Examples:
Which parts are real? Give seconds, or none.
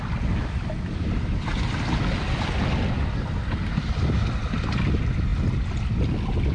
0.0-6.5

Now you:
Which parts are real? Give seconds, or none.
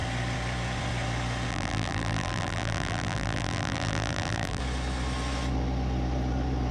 0.0-1.5; 4.6-6.7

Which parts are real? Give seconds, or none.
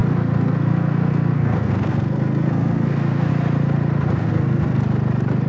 3.3-4.2; 4.8-5.5